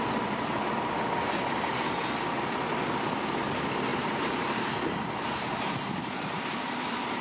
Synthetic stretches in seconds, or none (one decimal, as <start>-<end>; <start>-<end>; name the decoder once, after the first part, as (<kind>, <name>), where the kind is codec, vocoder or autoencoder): 3.9-6.4 (vocoder, BigVGAN v2)